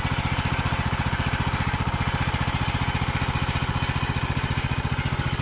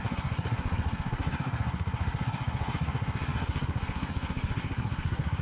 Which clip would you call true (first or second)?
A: first